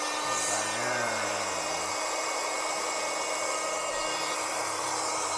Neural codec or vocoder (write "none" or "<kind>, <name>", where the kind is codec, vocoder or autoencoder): vocoder, BigVGAN v2